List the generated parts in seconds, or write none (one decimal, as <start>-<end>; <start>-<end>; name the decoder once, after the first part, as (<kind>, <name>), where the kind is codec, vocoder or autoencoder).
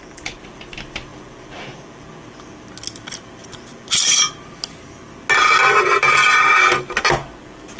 none